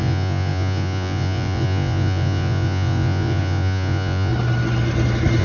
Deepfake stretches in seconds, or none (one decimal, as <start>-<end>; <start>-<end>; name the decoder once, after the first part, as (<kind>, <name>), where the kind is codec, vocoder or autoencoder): 0.0-4.3 (vocoder, Vocos)